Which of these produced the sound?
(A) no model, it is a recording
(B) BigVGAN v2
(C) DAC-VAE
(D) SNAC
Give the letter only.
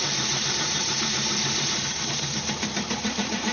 B